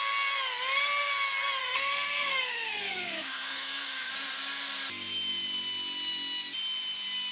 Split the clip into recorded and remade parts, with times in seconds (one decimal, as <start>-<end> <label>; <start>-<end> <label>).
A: 0.0-1.6 recorded; 1.6-4.1 remade; 4.1-7.3 recorded